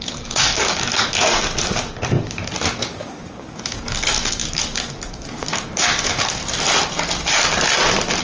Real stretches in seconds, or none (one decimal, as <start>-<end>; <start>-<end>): 6.4-8.2